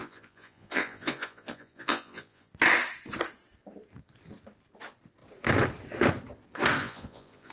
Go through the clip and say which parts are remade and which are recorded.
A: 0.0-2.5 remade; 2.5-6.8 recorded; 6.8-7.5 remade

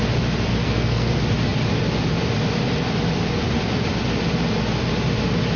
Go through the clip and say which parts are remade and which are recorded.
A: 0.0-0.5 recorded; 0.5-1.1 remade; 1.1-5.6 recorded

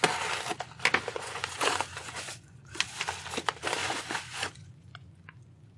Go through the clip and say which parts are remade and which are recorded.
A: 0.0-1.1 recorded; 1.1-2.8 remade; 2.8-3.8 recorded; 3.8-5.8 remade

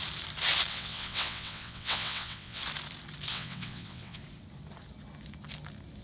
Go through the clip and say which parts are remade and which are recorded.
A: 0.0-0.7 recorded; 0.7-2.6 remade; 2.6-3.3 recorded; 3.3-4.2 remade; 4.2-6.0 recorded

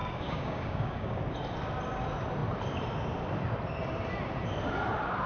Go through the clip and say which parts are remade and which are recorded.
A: 0.0-1.2 remade; 1.2-5.3 recorded

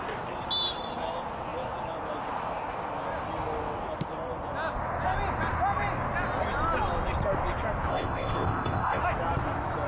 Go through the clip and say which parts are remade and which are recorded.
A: 0.0-7.9 recorded; 7.9-9.0 remade; 9.0-9.9 recorded

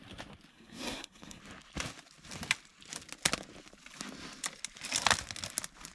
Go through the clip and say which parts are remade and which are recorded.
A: 0.0-0.5 recorded; 0.5-1.4 remade; 1.4-5.9 recorded